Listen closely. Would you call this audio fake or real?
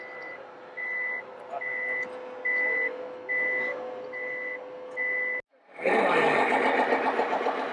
real